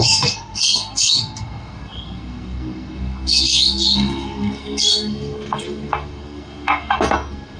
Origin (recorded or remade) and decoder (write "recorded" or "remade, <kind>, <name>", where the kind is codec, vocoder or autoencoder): remade, codec, SNAC